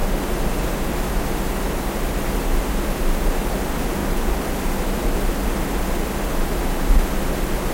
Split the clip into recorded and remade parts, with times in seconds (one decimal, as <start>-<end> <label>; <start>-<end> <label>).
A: 0.0-7.7 recorded